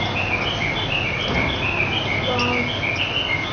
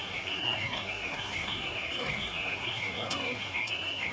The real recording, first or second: first